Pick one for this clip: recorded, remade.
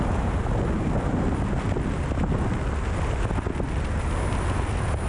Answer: recorded